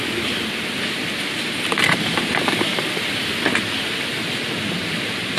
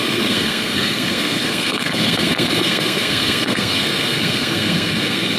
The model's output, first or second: second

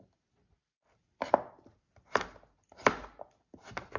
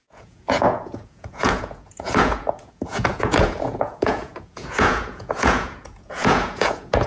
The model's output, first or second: second